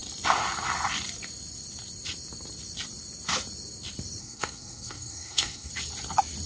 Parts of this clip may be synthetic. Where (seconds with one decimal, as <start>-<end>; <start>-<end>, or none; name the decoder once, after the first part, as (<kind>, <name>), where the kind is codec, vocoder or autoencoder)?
4.2-5.7 (codec, SNAC)